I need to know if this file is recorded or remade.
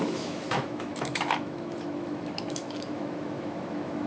remade